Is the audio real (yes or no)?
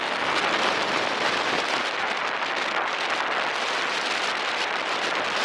yes